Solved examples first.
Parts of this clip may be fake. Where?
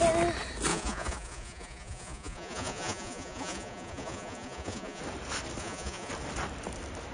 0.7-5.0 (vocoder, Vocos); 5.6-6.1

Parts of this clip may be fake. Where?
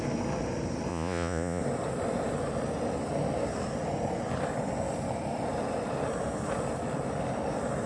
0.9-1.6 (vocoder, Vocos)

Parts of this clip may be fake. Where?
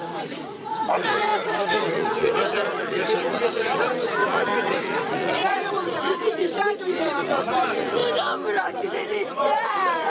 0.0-8.0 (vocoder, Vocos); 8.7-10.1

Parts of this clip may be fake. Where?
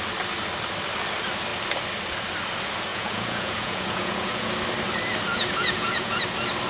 2.9-4.5 (vocoder, Vocos); 5.3-6.2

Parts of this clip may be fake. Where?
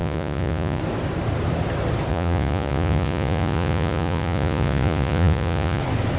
0.0-0.8 (vocoder, Vocos); 2.1-5.8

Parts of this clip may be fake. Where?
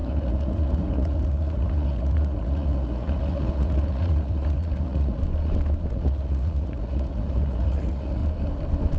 0.0-5.2 (vocoder, Vocos); 5.9-8.2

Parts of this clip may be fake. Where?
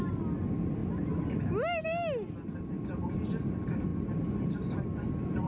none